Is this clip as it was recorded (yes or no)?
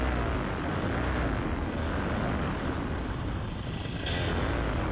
yes